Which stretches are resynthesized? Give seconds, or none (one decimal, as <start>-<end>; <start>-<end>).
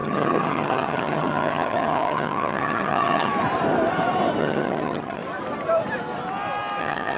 0.0-3.3; 4.4-5.2; 6.8-7.2